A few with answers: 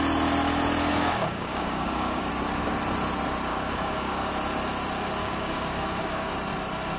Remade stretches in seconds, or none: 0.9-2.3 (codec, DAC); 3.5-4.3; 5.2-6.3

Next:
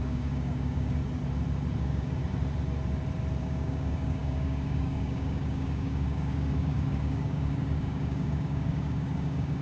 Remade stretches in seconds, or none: 0.0-1.0 (codec, DAC); 1.8-2.2; 3.4-9.6

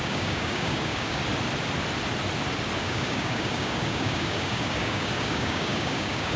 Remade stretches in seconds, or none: 0.0-1.2 (codec, DAC); 2.8-6.4

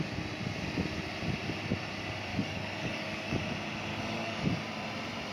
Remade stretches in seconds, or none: 2.3-3.4 (codec, DAC); 3.9-4.5

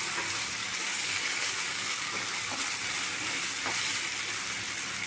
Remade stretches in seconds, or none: 0.6-2.5 (codec, DAC)

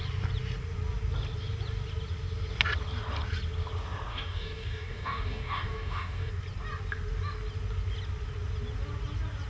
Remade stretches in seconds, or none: 4.1-6.3 (codec, DAC)